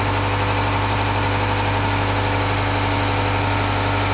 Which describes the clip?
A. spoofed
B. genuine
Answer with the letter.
B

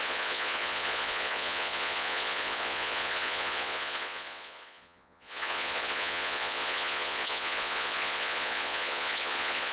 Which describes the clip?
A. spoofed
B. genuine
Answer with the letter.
A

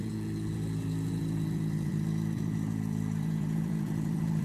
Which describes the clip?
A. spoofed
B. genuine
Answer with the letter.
A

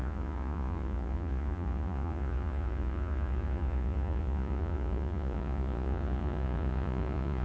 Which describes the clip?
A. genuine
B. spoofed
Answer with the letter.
B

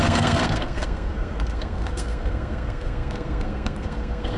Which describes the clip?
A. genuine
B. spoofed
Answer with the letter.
B